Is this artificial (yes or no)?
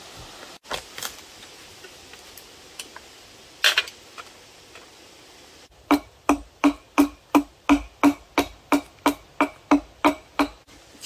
no